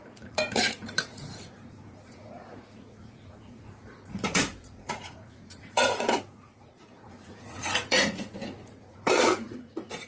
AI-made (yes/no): yes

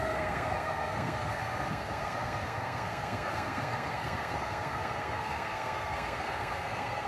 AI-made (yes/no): yes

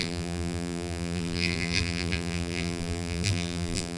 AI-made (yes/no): yes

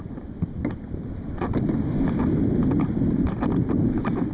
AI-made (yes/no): no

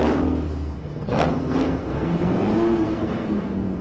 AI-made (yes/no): yes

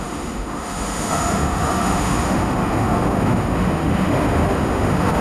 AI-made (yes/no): yes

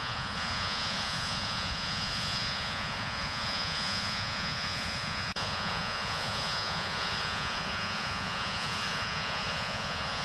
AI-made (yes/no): yes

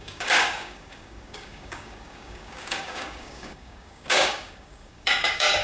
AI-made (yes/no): yes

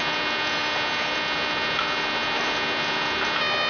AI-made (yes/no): no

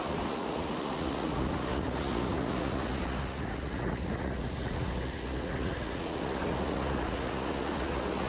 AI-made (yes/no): yes